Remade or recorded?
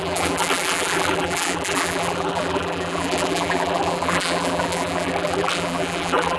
remade